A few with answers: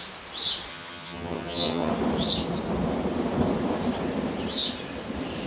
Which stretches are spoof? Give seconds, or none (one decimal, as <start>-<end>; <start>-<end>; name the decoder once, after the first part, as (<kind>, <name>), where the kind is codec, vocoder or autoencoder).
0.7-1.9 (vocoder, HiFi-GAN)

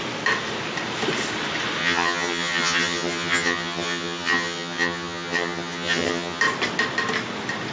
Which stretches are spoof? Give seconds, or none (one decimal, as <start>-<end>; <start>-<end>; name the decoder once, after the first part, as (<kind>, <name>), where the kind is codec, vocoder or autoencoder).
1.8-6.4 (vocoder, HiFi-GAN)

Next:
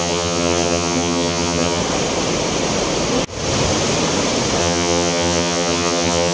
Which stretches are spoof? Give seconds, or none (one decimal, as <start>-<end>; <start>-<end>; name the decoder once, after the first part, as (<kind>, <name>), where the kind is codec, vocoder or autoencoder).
0.0-1.8 (vocoder, HiFi-GAN); 4.6-6.3

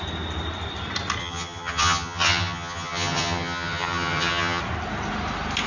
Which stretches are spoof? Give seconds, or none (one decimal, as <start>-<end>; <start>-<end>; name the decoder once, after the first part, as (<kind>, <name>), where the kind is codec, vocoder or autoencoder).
1.2-4.6 (vocoder, HiFi-GAN)